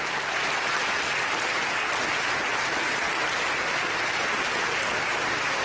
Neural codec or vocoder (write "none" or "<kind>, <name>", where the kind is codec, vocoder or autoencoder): none